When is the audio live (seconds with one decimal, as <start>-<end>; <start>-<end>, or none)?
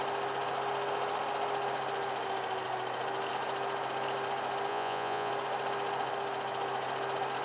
0.0-4.7; 5.3-7.4